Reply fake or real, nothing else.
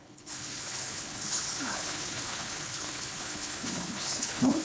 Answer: fake